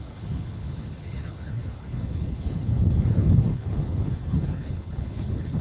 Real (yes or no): no